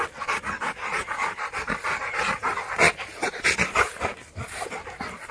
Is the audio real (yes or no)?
yes